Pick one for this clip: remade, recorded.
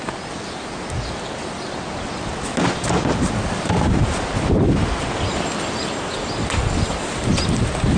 recorded